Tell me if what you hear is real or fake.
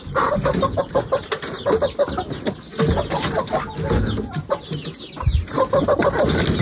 real